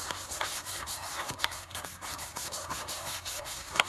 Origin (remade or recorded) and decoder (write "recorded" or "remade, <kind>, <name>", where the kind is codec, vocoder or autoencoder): remade, codec, SNAC